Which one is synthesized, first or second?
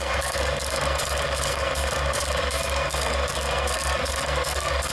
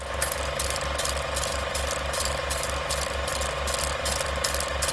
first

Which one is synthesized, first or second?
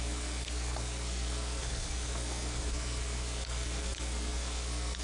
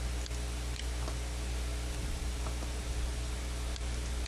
first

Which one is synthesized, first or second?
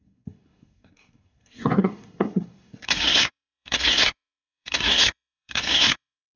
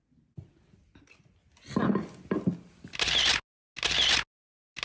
first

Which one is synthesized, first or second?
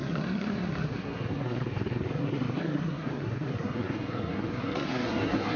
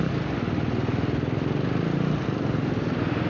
first